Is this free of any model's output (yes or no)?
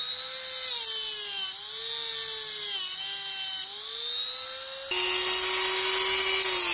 yes